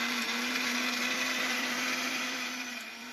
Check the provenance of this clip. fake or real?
fake